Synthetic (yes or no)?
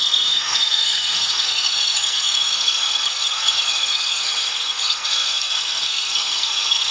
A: yes